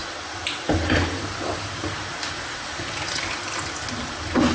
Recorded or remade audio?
recorded